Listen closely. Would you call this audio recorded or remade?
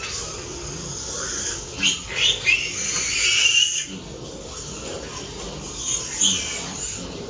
recorded